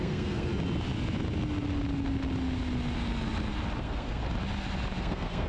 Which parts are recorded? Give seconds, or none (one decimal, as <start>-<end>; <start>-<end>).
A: 0.5-3.8; 4.2-5.0